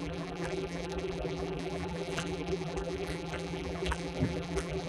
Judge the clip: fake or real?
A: fake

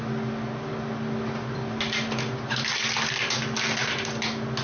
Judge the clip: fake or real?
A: real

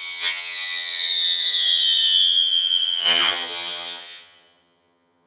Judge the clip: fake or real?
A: fake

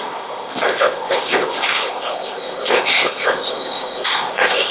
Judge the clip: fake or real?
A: fake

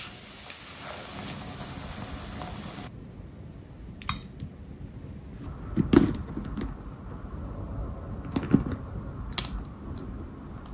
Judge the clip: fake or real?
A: real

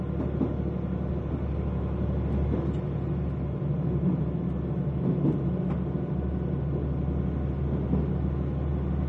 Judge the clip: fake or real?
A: real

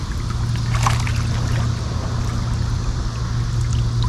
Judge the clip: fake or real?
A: real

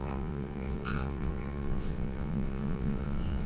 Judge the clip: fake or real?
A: fake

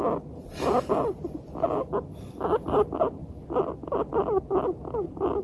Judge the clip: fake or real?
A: real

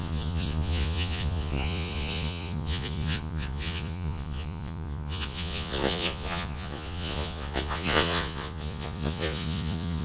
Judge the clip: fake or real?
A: fake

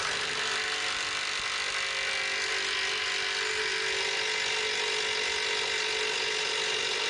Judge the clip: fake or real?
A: real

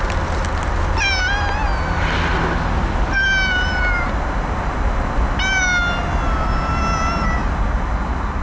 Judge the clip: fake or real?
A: real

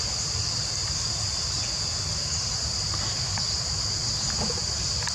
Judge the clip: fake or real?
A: real